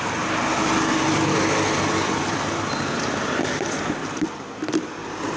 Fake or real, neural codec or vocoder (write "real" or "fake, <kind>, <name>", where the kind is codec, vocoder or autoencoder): real